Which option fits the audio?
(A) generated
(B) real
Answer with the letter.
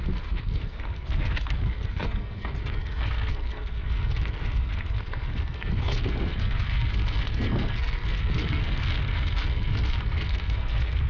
A